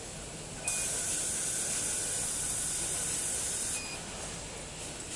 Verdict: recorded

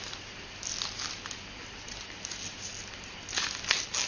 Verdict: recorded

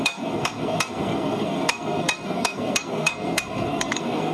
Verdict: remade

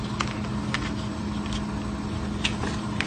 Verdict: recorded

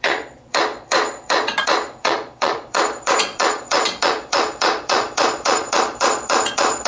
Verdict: remade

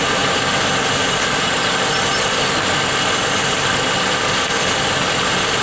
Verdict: recorded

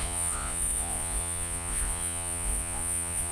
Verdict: remade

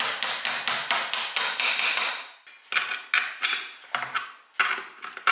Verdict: recorded